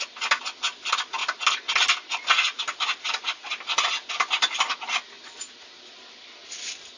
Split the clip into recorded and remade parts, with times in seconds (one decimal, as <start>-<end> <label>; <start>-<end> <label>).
0.0-7.0 recorded